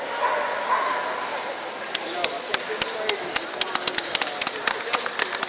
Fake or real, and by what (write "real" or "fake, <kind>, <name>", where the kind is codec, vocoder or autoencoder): fake, vocoder, BigVGAN v2